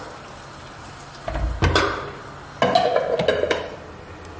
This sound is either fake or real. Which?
real